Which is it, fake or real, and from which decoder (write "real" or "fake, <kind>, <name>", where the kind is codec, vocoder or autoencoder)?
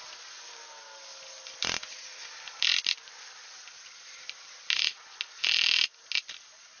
real